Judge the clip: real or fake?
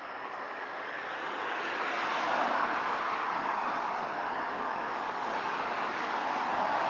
fake